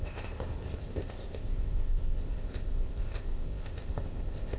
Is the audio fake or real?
fake